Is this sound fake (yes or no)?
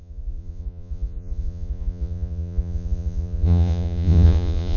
yes